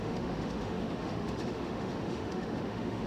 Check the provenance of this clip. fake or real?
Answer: fake